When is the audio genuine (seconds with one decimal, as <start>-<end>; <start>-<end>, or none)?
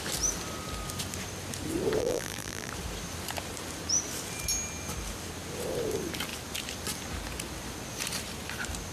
0.0-2.0; 2.7-8.9